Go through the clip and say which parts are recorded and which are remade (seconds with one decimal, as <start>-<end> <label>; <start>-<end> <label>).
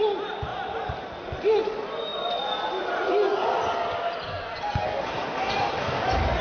0.0-6.4 recorded